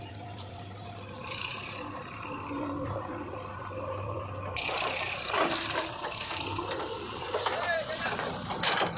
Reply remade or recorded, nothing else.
remade